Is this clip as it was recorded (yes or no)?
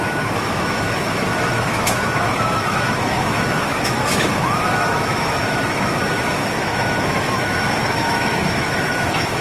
no